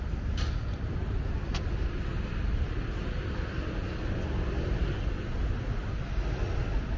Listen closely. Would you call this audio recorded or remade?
recorded